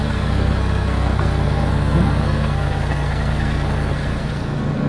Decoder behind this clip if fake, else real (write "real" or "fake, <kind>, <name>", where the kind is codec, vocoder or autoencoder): fake, codec, SNAC